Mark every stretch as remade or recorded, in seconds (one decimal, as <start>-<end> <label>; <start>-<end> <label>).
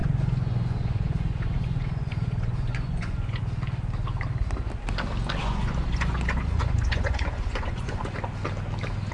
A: 0.0-3.4 remade; 3.4-5.4 recorded; 5.4-8.0 remade; 8.0-9.1 recorded